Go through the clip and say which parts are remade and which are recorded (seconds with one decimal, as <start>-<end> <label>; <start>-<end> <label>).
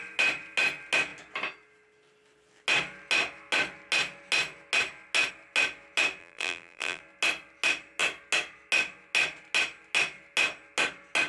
0.0-6.2 recorded; 6.2-7.0 remade; 7.0-11.3 recorded